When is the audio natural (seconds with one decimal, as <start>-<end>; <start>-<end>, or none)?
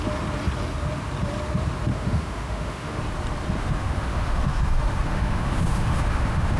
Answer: 0.0-1.9; 3.0-3.6